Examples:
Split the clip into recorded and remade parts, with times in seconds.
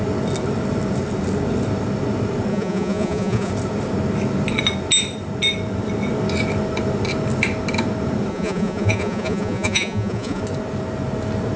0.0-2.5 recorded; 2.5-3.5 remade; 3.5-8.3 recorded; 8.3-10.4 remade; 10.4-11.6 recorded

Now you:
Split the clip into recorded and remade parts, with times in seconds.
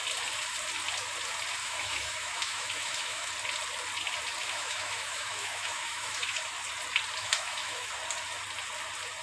0.0-1.6 recorded; 1.6-3.3 remade; 3.3-4.4 recorded; 4.4-6.4 remade; 6.4-7.2 recorded; 7.2-7.9 remade; 7.9-9.2 recorded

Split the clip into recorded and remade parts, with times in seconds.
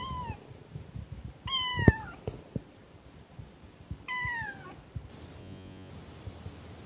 0.0-5.4 recorded; 5.4-5.9 remade; 5.9-6.9 recorded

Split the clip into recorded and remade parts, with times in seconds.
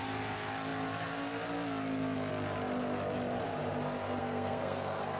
0.0-4.2 recorded; 4.2-5.2 remade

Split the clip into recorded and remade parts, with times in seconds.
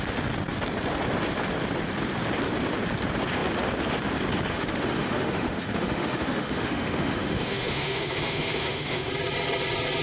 0.0-4.5 recorded; 4.5-9.1 remade; 9.1-10.0 recorded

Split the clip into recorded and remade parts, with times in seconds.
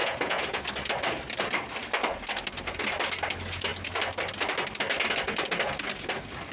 0.0-0.6 remade; 0.6-6.5 recorded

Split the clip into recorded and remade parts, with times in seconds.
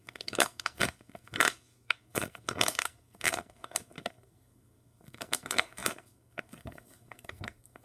0.0-7.8 remade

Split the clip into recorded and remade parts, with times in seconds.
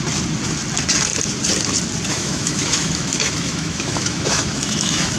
0.0-2.1 recorded; 2.1-5.2 remade